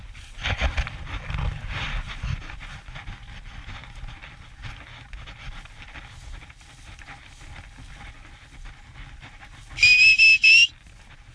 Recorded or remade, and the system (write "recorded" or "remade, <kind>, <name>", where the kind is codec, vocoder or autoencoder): recorded